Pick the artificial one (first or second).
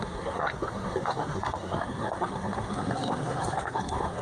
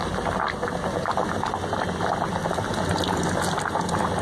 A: first